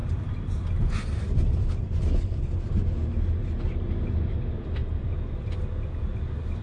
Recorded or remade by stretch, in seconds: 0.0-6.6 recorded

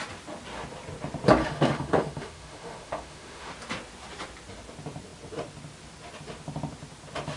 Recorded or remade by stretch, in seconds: 0.0-1.4 recorded; 1.4-3.5 remade; 3.5-7.4 recorded